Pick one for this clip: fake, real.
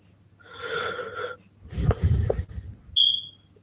real